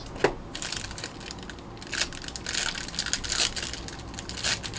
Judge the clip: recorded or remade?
recorded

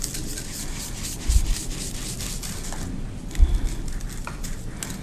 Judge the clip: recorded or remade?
recorded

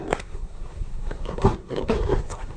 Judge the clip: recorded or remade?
remade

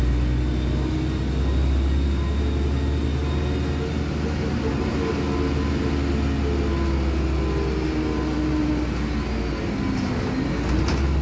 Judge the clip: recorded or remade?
recorded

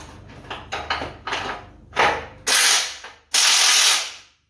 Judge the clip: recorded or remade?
recorded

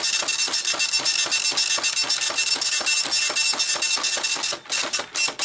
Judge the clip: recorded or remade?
recorded